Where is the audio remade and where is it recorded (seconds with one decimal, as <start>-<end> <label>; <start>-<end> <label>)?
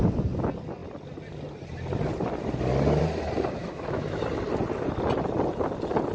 0.0-3.6 recorded; 3.6-4.2 remade; 4.2-6.1 recorded